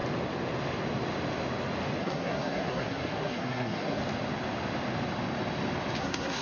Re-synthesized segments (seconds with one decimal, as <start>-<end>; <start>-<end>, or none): 2.0-4.0; 6.0-6.4